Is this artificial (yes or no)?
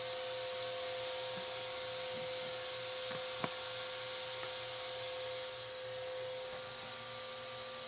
no